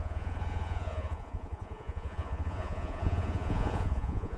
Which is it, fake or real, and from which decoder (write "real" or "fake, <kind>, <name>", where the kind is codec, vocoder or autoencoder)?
fake, vocoder, Vocos